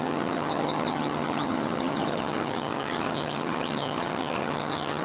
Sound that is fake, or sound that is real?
fake